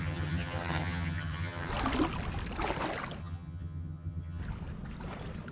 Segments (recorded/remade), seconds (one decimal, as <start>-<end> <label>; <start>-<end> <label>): 0.0-1.7 remade; 1.7-3.2 recorded; 3.2-4.4 remade; 4.4-5.5 recorded